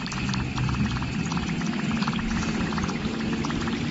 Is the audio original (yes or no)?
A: yes